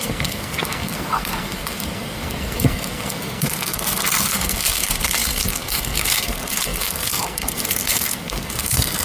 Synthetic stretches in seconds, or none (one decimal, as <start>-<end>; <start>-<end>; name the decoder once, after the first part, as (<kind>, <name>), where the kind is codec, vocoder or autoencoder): 0.0-9.0 (codec, SNAC)